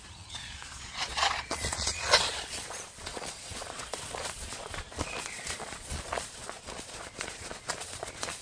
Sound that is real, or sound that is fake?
fake